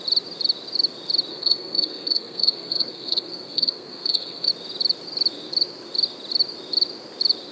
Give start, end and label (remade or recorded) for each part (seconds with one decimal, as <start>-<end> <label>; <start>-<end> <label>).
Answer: 0.0-1.3 recorded; 1.3-4.5 remade; 4.5-7.5 recorded